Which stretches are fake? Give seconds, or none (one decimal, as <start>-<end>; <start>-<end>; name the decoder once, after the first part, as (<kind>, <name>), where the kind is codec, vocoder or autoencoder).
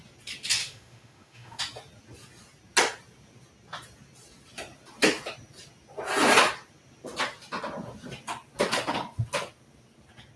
0.6-1.6 (autoencoder, DAC-VAE)